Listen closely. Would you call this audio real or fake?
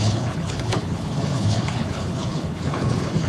fake